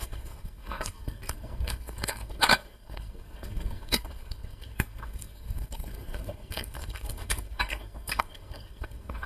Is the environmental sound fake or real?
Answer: fake